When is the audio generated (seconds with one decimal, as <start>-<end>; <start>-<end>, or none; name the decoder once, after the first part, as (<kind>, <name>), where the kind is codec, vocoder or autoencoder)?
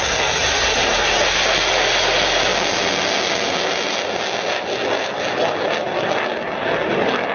none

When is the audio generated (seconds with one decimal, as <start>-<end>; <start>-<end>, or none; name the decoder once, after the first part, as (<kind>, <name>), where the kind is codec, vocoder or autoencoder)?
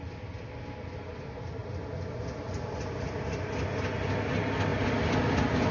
none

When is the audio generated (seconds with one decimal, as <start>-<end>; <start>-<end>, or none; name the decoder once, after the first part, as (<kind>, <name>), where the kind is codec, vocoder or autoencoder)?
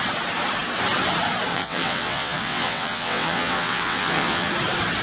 1.5-4.5 (vocoder, WaveNeXt)